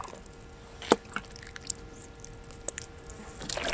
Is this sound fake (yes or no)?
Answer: no